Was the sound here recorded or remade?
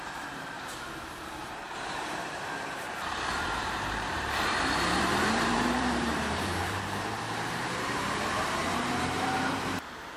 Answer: remade